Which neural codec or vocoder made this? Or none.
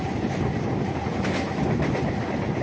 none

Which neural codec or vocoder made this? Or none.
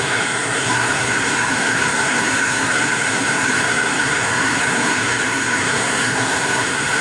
codec, SNAC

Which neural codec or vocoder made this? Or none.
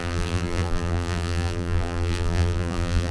vocoder, BigVGAN v2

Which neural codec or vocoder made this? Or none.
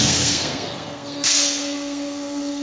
codec, SNAC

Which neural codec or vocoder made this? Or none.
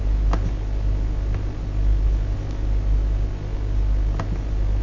none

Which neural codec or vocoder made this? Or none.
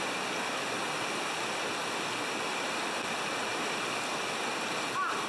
none